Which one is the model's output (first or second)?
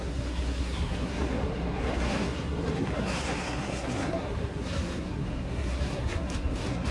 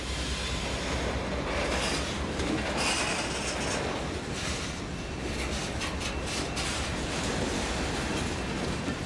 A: first